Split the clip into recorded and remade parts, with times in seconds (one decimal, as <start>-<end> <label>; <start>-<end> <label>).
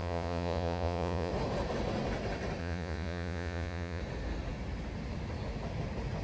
0.0-1.3 remade; 1.3-2.6 recorded; 2.6-4.0 remade; 4.0-6.2 recorded